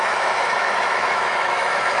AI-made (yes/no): yes